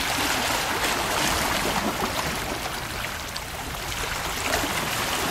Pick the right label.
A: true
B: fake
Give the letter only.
A